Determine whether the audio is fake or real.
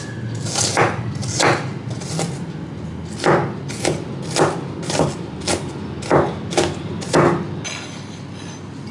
real